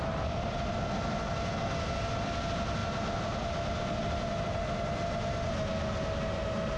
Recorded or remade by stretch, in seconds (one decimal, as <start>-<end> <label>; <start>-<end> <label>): 0.0-6.8 recorded